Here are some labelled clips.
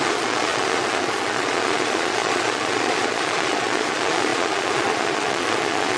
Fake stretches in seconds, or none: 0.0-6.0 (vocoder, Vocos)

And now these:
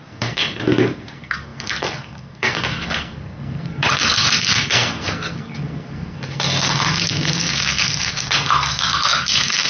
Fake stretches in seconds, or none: 0.0-9.7 (codec, SNAC)

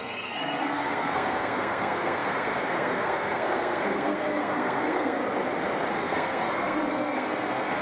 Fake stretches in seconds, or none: 0.0-5.2 (codec, SNAC); 5.9-7.8

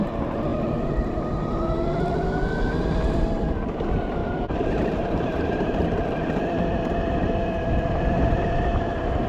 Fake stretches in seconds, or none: 4.2-5.5 (vocoder, BigVGAN v2)

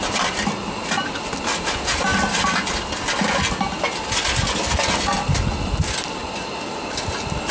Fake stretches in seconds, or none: none